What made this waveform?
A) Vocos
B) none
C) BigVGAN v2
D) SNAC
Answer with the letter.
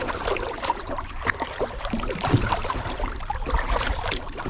C